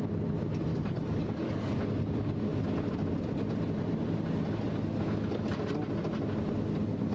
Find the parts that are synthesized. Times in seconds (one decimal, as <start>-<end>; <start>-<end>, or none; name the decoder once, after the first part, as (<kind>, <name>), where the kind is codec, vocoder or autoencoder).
0.7-1.7 (codec, DAC)